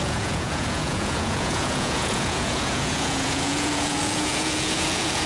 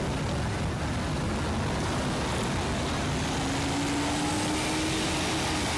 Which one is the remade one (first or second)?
first